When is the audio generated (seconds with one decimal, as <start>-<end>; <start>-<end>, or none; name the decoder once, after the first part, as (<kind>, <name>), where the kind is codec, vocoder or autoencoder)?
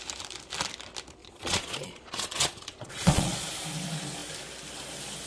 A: 1.2-3.5 (vocoder, Vocos)